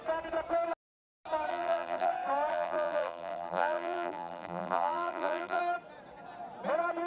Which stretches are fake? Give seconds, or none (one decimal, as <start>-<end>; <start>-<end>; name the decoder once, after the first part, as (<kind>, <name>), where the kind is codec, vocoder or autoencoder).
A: 1.5-2.1 (vocoder, BigVGAN v2); 2.5-5.6